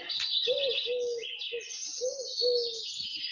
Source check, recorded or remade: recorded